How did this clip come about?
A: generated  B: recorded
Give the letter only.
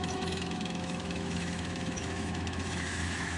A